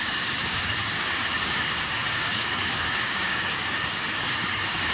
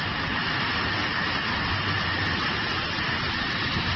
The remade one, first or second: first